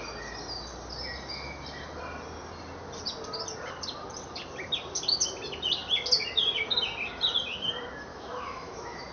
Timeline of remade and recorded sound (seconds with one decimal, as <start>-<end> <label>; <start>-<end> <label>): 0.0-8.1 recorded; 8.1-9.1 remade